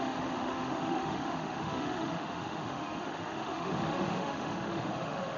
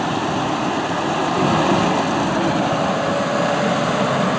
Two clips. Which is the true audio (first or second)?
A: second